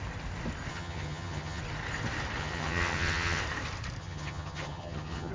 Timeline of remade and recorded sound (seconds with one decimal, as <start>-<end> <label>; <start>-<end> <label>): 0.0-0.7 recorded; 0.7-1.6 remade; 1.6-2.4 recorded; 2.4-3.4 remade; 3.4-4.0 recorded; 4.0-5.3 remade